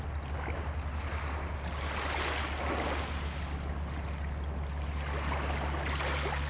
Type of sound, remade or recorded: recorded